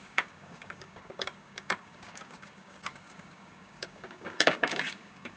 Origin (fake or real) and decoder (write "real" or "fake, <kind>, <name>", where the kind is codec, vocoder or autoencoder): fake, codec, DAC